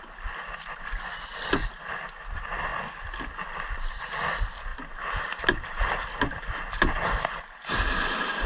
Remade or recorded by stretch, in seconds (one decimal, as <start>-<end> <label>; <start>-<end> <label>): 0.0-8.5 recorded